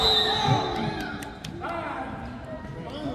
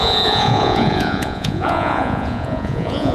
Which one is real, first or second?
first